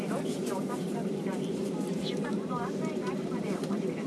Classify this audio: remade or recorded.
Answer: remade